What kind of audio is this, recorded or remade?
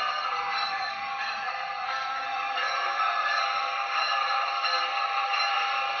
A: remade